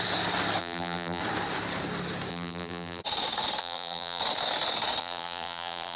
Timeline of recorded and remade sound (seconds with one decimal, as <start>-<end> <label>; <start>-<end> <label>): 0.0-0.6 recorded; 0.6-1.2 remade; 1.2-2.3 recorded; 2.3-3.0 remade; 3.0-3.6 recorded; 3.6-4.2 remade; 4.2-5.0 recorded; 5.0-6.0 remade